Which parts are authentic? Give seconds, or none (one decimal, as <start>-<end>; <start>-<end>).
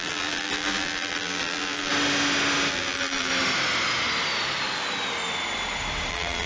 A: 1.9-2.7; 3.3-6.1